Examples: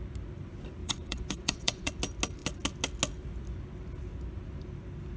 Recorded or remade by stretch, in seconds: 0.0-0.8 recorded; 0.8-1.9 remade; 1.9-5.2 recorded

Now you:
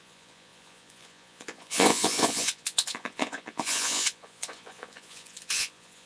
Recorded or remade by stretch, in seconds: 0.0-6.1 remade

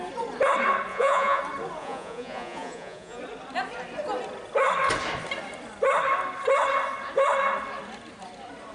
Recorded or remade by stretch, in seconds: 0.0-0.9 recorded; 0.9-1.4 remade; 1.4-1.8 recorded; 1.8-3.2 remade; 3.2-8.7 recorded

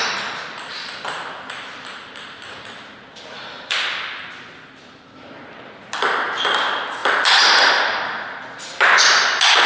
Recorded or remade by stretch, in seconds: 0.0-9.7 recorded

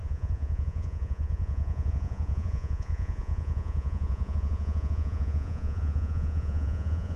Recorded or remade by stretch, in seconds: 0.0-7.2 remade